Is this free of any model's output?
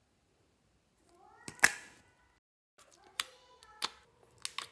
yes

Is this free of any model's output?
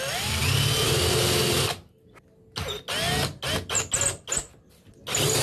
yes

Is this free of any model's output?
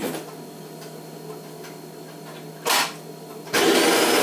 yes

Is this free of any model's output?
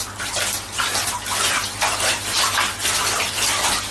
yes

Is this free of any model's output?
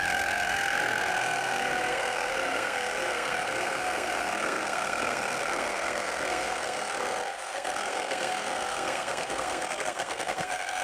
no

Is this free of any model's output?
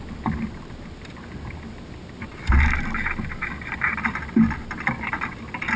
yes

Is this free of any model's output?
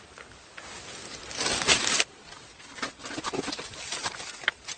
yes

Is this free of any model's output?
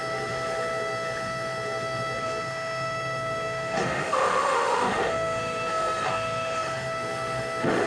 no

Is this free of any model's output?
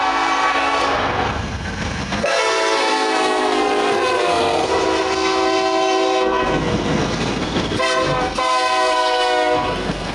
no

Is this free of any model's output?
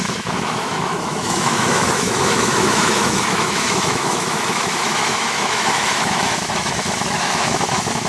no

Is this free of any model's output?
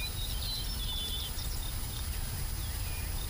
yes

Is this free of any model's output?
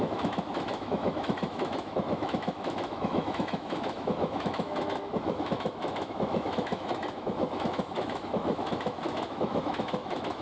no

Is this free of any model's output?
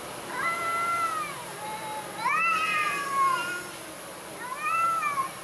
yes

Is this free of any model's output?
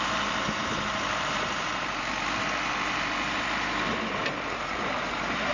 no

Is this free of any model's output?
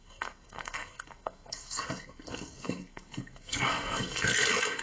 no